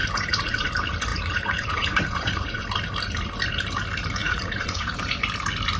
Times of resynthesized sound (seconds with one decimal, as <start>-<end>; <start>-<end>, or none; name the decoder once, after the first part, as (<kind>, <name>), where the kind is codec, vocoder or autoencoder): 0.0-0.7 (vocoder, Vocos); 1.1-2.6; 4.2-4.9

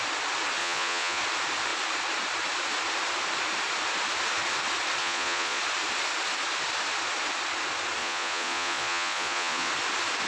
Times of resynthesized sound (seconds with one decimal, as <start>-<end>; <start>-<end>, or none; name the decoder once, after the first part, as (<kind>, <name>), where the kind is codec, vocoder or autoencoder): 0.6-1.2 (vocoder, Vocos); 5.0-5.6; 8.0-9.7

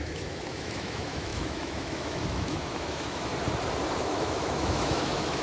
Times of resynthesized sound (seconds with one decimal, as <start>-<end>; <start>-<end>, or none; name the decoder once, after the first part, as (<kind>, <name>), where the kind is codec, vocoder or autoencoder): 0.0-3.3 (autoencoder, DAC-VAE); 4.0-5.4

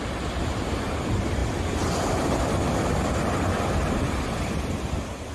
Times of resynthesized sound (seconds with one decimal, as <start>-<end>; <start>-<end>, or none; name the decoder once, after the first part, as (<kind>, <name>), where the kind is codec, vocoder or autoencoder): none